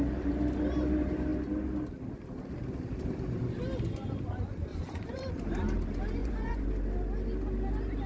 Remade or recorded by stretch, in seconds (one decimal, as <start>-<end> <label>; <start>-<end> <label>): 0.0-4.7 recorded; 4.7-5.3 remade; 5.3-6.2 recorded; 6.2-6.7 remade; 6.7-8.1 recorded